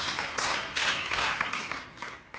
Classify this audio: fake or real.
fake